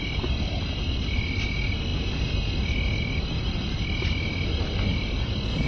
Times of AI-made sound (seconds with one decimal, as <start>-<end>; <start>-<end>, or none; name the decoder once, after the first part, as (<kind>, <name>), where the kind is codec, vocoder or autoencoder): none